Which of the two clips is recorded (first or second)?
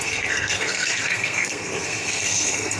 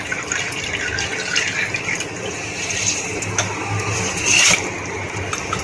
second